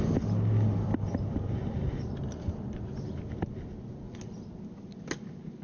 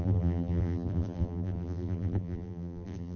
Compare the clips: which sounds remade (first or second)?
second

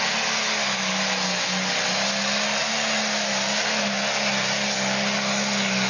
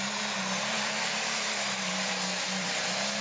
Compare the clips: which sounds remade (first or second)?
second